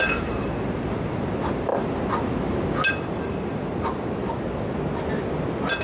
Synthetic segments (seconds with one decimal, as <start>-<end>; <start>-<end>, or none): none